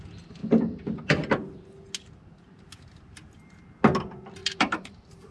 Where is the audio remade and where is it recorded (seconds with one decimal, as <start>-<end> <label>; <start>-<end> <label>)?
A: 0.0-4.4 recorded; 4.4-5.3 remade